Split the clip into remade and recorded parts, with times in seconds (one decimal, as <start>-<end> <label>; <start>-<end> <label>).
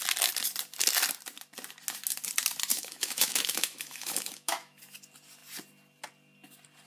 0.0-2.7 recorded; 2.7-4.8 remade; 4.8-6.9 recorded